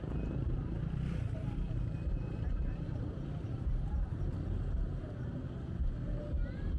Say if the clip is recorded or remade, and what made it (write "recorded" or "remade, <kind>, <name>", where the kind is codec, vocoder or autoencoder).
remade, vocoder, BigVGAN v2